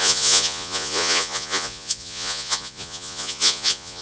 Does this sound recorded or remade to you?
remade